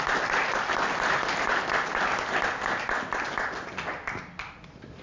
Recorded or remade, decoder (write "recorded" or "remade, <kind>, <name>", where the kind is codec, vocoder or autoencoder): recorded